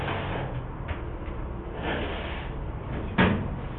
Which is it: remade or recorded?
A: recorded